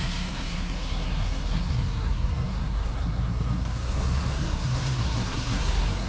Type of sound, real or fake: fake